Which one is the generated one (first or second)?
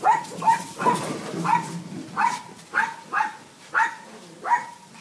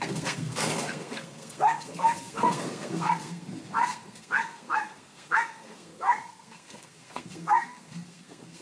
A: second